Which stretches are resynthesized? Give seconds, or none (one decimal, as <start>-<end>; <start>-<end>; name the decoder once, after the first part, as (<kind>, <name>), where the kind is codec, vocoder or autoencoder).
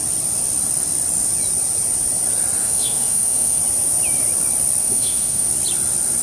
2.6-3.6 (autoencoder, DAC-VAE); 4.8-5.5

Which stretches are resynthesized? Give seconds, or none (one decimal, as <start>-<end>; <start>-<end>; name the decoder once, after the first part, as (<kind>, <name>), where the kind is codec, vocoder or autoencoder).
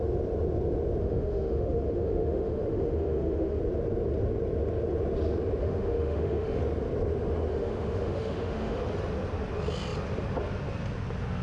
1.0-3.6 (autoencoder, DAC-VAE); 5.6-6.6; 7.5-8.8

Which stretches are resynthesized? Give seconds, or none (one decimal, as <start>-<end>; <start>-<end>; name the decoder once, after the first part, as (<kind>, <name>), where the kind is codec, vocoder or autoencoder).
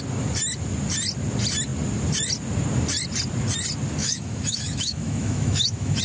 4.0-6.0 (autoencoder, DAC-VAE)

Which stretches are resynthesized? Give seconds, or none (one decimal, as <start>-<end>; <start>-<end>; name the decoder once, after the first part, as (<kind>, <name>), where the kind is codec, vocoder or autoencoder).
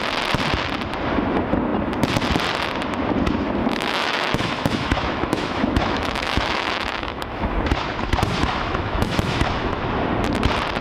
3.6-7.5 (autoencoder, DAC-VAE); 8.4-9.8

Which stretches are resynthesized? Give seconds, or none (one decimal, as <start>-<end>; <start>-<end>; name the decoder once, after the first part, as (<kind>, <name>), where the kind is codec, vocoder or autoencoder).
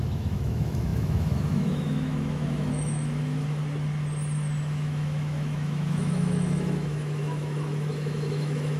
0.0-3.6 (autoencoder, DAC-VAE); 4.6-8.8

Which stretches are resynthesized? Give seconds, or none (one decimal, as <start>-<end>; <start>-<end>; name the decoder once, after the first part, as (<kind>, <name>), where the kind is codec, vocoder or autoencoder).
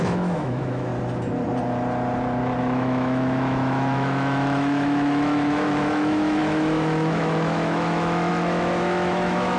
0.0-0.9 (autoencoder, DAC-VAE); 2.6-9.6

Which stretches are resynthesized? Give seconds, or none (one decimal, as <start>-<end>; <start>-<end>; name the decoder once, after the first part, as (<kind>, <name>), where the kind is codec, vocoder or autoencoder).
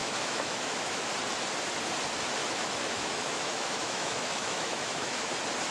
0.0-1.1 (autoencoder, DAC-VAE); 2.4-5.3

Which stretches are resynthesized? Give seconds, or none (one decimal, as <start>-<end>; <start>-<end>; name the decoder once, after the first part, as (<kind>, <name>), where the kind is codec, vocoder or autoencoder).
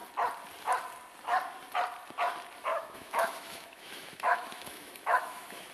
2.7-5.7 (autoencoder, DAC-VAE)